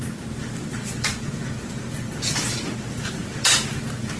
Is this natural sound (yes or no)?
yes